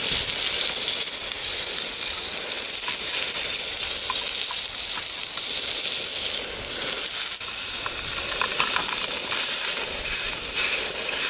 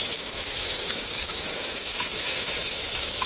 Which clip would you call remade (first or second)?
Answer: second